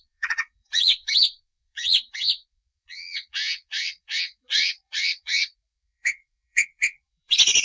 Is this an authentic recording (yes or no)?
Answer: no